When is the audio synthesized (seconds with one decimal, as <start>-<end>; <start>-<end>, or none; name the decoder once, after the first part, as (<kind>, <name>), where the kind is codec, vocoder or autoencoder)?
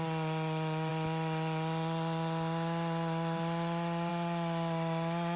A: none